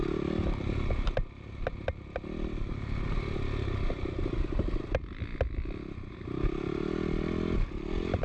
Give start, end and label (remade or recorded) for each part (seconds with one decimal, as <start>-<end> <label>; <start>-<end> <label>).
0.0-8.2 recorded